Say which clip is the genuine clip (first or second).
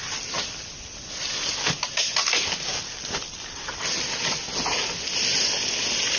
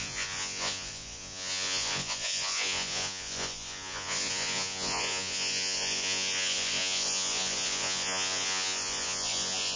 first